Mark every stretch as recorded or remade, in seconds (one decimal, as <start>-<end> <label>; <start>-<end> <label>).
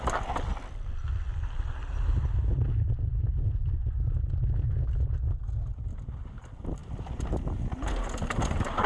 0.0-0.5 recorded; 0.5-2.1 remade; 2.1-8.9 recorded